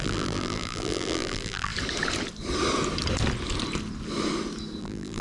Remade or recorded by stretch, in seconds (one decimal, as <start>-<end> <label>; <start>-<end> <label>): 0.0-1.7 remade; 1.7-4.8 recorded; 4.8-5.2 remade